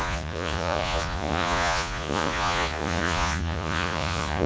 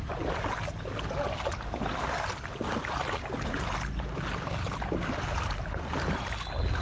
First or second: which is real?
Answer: second